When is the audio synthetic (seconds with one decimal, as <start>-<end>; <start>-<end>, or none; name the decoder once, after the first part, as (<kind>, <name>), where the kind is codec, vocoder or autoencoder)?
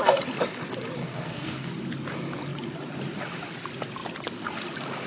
1.0-1.7 (codec, SNAC)